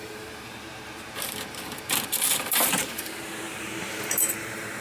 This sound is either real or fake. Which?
fake